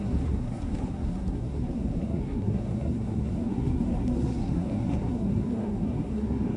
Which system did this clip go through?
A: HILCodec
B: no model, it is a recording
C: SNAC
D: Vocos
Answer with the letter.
C